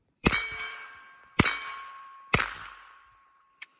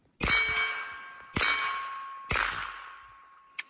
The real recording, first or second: second